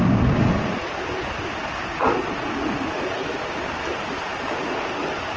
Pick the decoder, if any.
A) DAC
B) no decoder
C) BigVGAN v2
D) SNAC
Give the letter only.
B